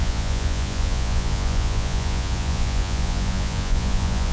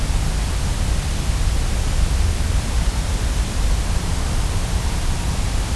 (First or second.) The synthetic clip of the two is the first